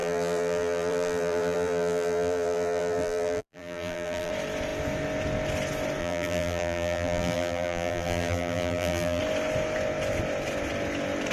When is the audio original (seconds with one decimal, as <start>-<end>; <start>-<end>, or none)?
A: 4.3-6.0; 9.2-11.3